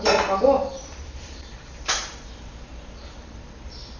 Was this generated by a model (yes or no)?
yes